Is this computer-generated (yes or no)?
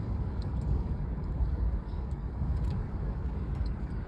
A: yes